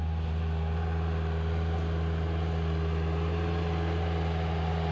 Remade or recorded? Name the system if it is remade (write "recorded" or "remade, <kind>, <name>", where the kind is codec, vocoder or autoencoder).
recorded